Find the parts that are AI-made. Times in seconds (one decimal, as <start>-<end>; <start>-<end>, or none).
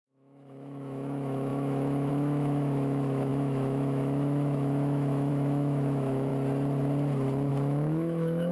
0.0-6.3; 7.5-8.5